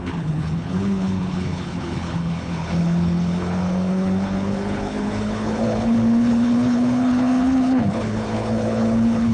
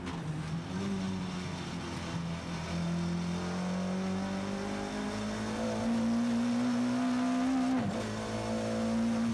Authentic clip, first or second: second